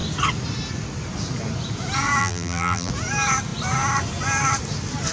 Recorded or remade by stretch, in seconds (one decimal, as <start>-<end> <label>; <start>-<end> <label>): 0.0-2.2 recorded; 2.2-2.9 remade; 2.9-5.1 recorded